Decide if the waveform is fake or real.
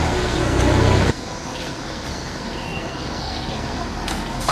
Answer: fake